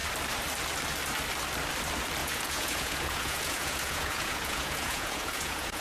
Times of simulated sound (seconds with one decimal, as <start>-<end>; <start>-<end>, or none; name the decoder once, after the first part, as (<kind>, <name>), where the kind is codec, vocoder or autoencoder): 2.2-5.8 (vocoder, Vocos)